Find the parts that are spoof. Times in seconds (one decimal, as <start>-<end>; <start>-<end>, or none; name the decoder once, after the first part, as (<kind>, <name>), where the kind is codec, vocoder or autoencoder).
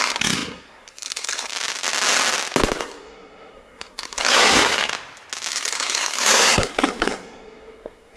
0.0-1.5 (codec, SNAC); 2.8-4.9; 5.5-8.2